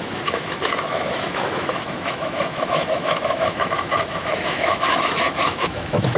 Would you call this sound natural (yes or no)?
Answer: no